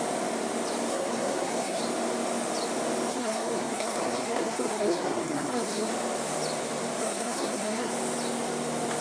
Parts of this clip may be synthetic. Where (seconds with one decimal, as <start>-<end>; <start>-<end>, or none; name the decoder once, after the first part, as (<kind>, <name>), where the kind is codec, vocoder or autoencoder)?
0.9-1.8 (codec, SNAC); 3.1-5.9; 7.0-7.9